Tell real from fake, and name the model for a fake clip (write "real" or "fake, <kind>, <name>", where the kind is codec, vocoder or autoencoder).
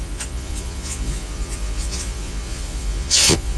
fake, vocoder, Vocos